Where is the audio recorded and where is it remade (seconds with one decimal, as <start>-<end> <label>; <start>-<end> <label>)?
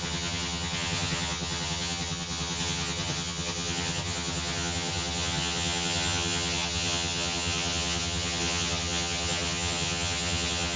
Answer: 0.0-10.8 remade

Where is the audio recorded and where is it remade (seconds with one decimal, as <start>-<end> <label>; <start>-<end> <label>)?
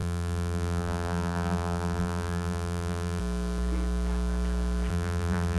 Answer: 0.0-3.2 remade; 3.2-4.9 recorded; 4.9-5.6 remade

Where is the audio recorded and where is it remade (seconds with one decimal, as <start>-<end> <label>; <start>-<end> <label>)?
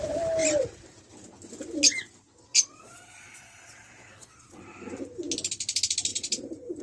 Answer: 0.0-2.5 recorded; 2.5-4.6 remade; 4.6-6.1 recorded; 6.1-6.8 remade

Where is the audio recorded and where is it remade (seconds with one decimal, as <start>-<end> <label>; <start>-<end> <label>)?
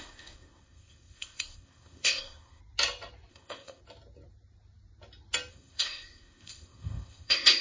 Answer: 0.0-2.6 remade; 2.6-3.3 recorded; 3.3-3.8 remade; 3.8-5.5 recorded; 5.5-7.6 remade